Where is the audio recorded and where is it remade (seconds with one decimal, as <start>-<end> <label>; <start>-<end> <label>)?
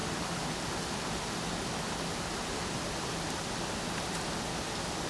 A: 0.0-5.1 recorded